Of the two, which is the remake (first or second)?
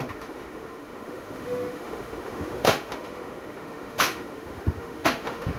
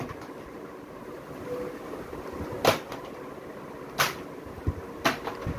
first